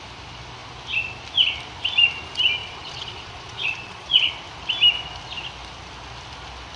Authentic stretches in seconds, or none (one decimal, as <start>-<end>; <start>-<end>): 0.0-2.6; 4.3-6.8